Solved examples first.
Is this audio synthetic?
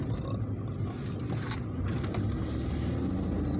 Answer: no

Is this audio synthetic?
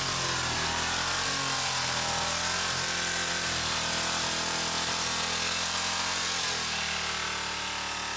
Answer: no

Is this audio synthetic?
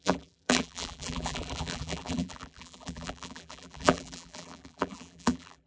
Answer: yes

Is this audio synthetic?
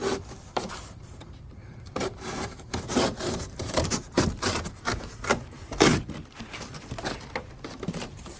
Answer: yes